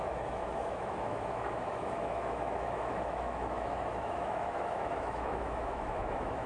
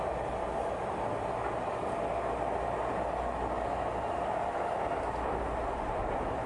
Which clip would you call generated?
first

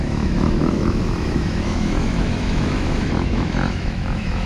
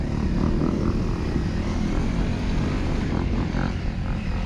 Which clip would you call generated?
first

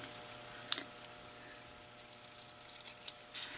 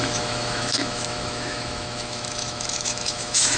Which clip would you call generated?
second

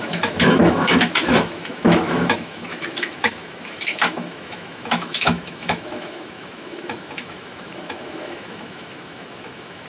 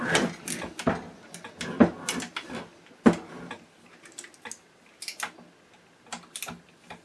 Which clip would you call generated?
first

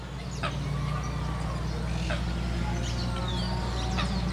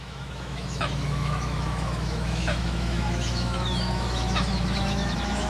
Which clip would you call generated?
second